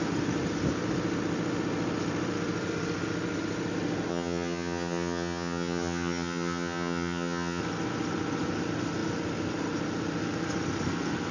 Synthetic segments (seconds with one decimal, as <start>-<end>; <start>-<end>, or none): 4.1-7.6